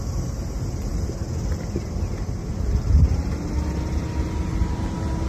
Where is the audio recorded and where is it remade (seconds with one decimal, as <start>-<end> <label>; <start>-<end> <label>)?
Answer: 0.0-5.3 recorded